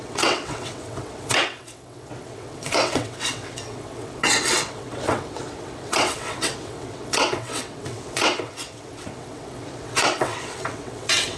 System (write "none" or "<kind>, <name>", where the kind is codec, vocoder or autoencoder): vocoder, WaveNeXt